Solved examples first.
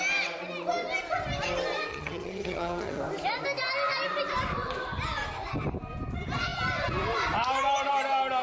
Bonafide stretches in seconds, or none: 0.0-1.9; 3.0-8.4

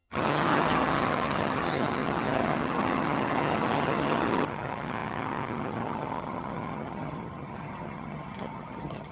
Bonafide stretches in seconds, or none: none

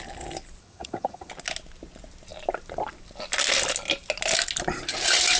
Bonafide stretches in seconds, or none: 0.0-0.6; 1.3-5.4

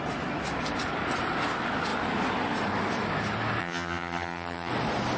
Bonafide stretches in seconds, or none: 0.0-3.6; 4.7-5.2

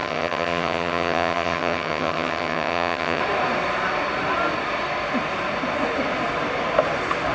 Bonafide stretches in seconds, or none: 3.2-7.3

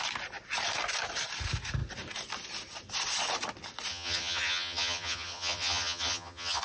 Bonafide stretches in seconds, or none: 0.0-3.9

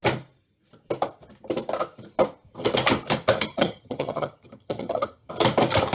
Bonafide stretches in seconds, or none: 0.0-3.5; 5.3-5.9

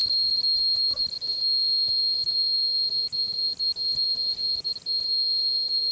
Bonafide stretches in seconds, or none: 0.0-5.9